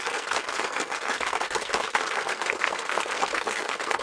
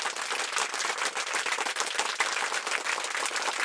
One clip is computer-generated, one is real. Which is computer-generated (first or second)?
first